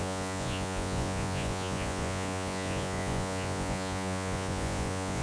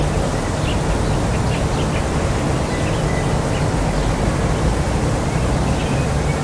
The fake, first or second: first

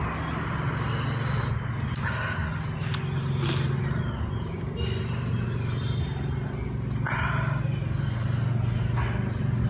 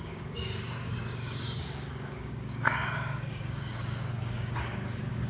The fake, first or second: second